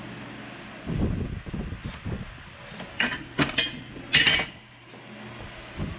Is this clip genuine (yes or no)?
yes